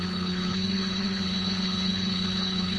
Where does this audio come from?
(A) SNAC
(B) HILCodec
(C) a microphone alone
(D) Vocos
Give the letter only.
B